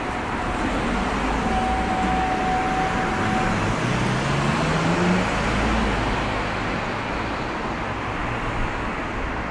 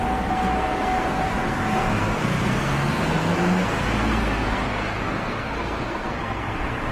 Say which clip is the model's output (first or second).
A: second